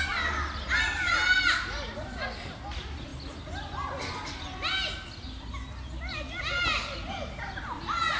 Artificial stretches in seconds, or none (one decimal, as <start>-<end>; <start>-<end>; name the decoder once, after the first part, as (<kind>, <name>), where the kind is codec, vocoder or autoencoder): none